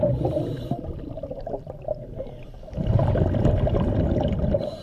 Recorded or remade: recorded